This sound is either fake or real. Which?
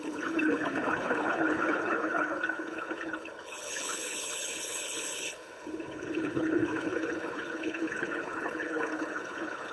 fake